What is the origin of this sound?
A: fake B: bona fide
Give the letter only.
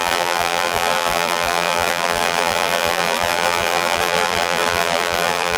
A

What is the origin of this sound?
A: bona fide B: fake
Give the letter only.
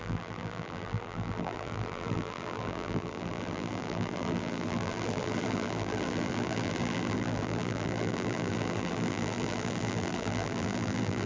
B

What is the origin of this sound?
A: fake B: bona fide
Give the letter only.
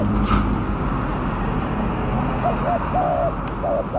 B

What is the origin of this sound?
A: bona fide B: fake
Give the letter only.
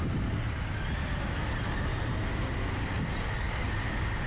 B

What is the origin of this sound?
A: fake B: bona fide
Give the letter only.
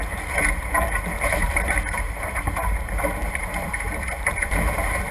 A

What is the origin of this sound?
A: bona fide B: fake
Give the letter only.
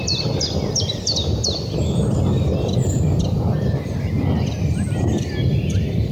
B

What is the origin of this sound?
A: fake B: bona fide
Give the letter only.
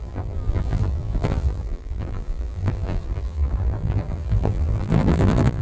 A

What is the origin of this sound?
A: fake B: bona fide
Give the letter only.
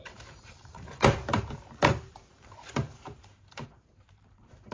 A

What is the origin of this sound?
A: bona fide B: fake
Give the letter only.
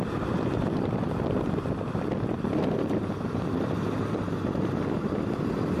B